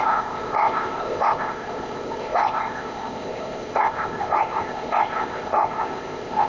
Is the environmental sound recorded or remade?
remade